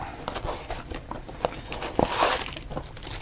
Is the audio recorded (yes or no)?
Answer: yes